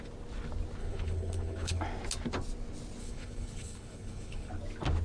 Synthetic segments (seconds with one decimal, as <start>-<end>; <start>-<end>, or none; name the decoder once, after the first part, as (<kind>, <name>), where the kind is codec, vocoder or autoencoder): 0.8-1.8 (codec, HILCodec); 3.0-4.5